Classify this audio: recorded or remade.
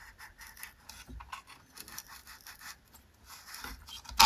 recorded